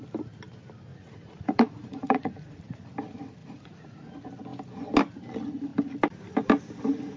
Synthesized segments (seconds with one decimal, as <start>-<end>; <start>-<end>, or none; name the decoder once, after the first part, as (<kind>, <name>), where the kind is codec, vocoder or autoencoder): 0.9-2.6 (vocoder, Vocos); 3.4-4.1